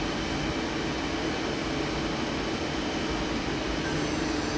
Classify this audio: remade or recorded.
recorded